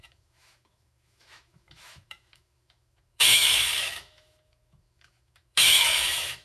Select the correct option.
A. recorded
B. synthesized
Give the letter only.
B